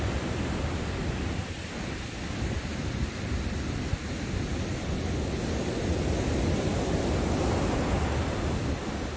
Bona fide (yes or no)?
yes